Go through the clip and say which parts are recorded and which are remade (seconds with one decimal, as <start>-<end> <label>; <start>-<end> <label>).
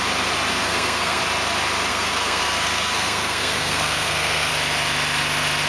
0.0-0.6 recorded; 0.6-1.2 remade; 1.2-1.9 recorded; 1.9-4.5 remade; 4.5-5.7 recorded